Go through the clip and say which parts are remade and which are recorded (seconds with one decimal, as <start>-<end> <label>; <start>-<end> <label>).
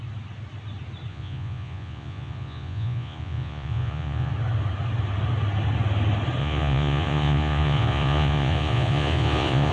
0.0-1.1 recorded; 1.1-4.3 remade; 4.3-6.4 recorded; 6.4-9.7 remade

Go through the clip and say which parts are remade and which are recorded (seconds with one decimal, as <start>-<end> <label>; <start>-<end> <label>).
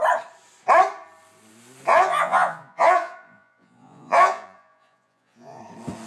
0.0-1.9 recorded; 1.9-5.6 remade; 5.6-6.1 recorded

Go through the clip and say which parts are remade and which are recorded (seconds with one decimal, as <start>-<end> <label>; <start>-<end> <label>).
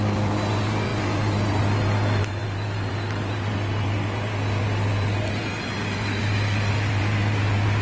0.0-7.8 recorded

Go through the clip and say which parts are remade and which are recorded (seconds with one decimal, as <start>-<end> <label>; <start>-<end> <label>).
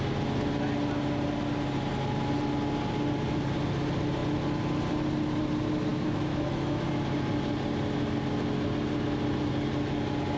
0.0-5.9 recorded; 5.9-6.8 remade; 6.8-10.4 recorded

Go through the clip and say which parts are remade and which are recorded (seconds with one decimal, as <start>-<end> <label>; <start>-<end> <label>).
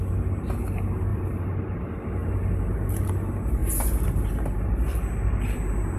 0.0-1.1 recorded; 1.1-1.8 remade; 1.8-2.2 recorded; 2.2-3.1 remade; 3.1-3.6 recorded; 3.6-6.0 remade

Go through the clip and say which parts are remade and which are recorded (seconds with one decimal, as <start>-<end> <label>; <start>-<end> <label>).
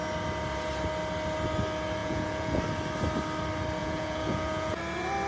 0.0-2.0 recorded; 2.0-2.6 remade; 2.6-3.8 recorded; 3.8-4.8 remade; 4.8-5.3 recorded